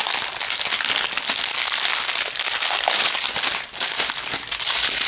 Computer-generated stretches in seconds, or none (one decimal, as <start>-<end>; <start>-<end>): none